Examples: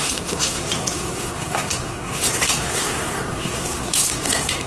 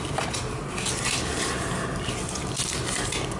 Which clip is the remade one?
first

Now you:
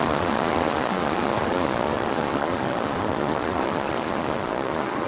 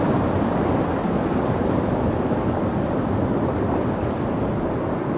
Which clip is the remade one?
first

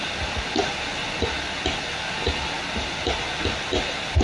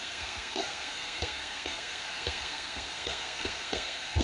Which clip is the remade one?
second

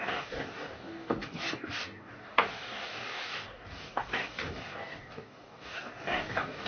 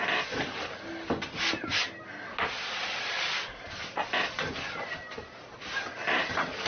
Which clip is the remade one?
first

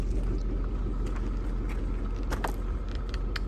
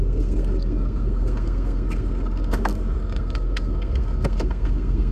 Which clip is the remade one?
second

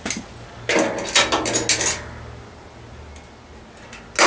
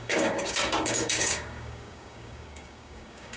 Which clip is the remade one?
second